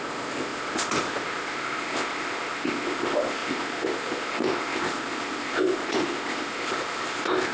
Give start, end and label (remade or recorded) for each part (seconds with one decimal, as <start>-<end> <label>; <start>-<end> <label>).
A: 0.0-7.5 remade